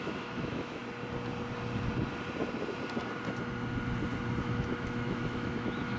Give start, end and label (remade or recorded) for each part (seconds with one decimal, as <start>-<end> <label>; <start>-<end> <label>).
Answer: 0.0-0.8 remade; 0.8-4.4 recorded; 4.4-6.0 remade